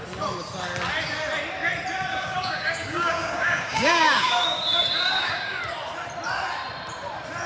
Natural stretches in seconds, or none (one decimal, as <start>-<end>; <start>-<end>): 0.0-2.1; 5.6-7.5